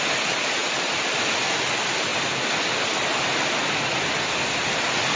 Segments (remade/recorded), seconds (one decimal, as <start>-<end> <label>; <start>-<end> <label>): 0.0-5.2 recorded